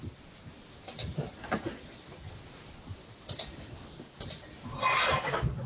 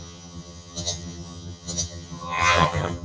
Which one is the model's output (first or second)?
second